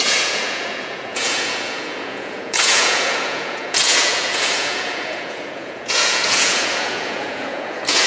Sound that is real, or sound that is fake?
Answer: fake